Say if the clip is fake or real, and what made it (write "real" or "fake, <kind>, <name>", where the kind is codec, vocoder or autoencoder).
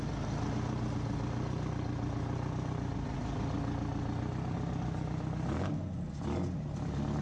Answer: real